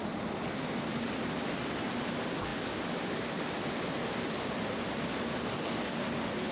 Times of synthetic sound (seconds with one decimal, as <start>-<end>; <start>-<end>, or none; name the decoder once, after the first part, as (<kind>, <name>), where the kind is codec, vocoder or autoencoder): none